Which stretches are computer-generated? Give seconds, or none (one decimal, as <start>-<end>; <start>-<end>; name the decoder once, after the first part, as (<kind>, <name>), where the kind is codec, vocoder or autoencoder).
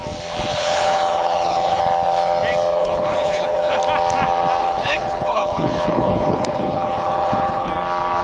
0.5-1.8 (codec, HILCodec); 2.8-3.8; 4.6-7.7